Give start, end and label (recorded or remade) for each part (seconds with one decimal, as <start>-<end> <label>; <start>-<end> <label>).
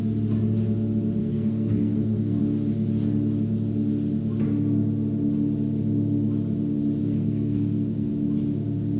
0.0-1.2 recorded; 1.2-2.4 remade; 2.4-7.0 recorded; 7.0-8.1 remade; 8.1-9.0 recorded